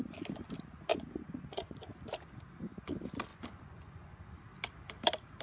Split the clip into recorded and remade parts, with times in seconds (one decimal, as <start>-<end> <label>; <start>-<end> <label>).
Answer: 0.0-0.9 recorded; 0.9-1.9 remade; 1.9-3.3 recorded; 3.3-4.3 remade; 4.3-5.4 recorded